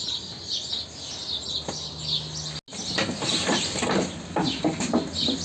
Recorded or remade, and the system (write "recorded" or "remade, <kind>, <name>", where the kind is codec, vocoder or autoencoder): recorded